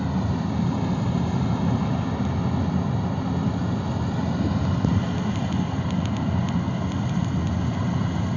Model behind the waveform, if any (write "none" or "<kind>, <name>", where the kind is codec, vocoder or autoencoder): none